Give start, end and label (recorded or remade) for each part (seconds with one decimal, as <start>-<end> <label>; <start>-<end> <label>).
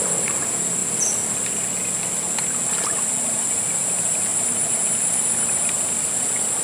0.0-6.6 recorded